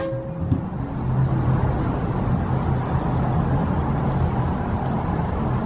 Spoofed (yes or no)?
no